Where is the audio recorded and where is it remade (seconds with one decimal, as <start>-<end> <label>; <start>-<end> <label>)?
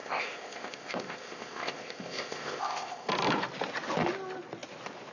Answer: 0.0-3.1 remade; 3.1-5.1 recorded